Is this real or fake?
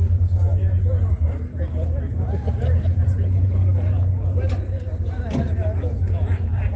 real